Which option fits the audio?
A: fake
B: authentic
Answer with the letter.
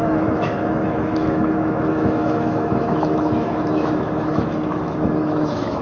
A